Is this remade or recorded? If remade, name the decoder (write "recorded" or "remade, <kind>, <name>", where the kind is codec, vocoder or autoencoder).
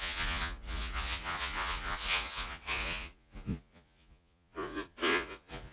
remade, vocoder, Vocos